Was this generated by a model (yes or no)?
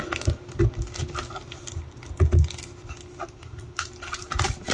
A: no